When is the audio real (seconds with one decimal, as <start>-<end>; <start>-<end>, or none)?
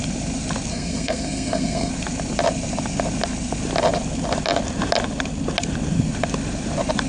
0.0-0.7; 1.9-7.1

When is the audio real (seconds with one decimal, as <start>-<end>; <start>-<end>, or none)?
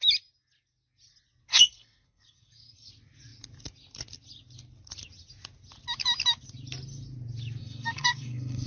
0.0-1.5; 2.9-7.6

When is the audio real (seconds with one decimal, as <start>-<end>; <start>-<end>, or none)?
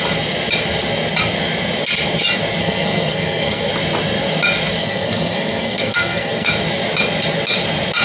0.0-2.6; 3.7-4.8; 6.5-8.0